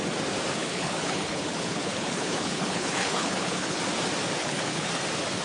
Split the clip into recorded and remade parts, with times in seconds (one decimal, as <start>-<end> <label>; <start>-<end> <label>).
0.0-0.6 recorded; 0.6-3.8 remade; 3.8-4.4 recorded; 4.4-4.9 remade; 4.9-5.4 recorded